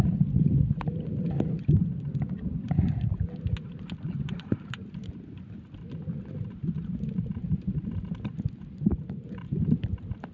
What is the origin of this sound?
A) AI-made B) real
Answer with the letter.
B